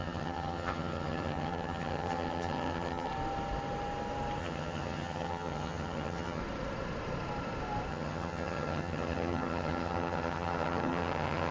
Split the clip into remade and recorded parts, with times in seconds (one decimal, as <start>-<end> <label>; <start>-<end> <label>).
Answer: 0.0-3.1 remade; 3.1-4.4 recorded; 4.4-6.4 remade; 6.4-7.9 recorded; 7.9-11.5 remade

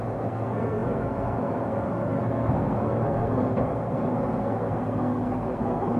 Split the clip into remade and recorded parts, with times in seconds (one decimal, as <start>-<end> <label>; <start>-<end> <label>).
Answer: 0.0-6.0 remade

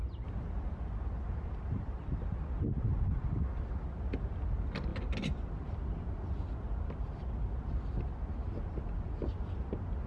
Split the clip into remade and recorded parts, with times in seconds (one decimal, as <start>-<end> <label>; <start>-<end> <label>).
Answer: 0.0-10.1 recorded

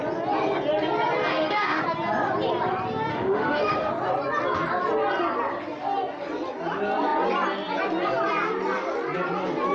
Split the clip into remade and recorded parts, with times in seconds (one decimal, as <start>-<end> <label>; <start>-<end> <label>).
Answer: 0.0-1.3 recorded; 1.3-1.8 remade; 1.8-3.1 recorded; 3.1-3.9 remade; 3.9-9.7 recorded

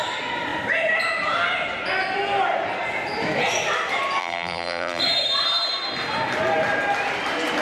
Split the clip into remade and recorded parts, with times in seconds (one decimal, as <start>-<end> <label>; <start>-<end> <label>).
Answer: 0.0-4.2 recorded; 4.2-5.0 remade; 5.0-7.6 recorded